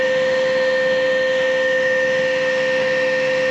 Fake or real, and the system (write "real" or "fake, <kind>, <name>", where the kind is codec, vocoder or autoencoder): fake, autoencoder, DAC-VAE